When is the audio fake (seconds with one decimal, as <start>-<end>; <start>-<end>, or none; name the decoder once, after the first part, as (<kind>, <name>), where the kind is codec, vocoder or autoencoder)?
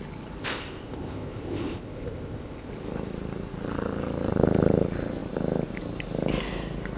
0.4-2.7 (codec, ZipCodec)